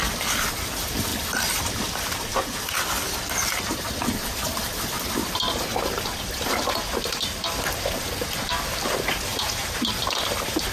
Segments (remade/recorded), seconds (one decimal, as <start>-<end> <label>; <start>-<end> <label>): 0.0-2.3 remade; 2.3-3.5 recorded; 3.5-5.2 remade; 5.2-6.2 recorded; 6.2-10.7 remade